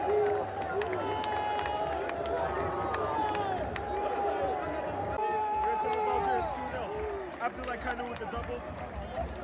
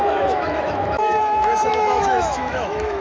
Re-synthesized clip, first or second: second